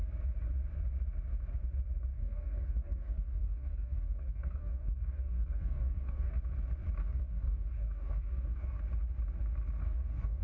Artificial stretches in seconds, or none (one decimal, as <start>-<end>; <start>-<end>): 2.1-6.4; 7.0-8.8; 9.8-10.4